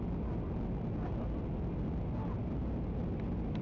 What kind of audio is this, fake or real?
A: real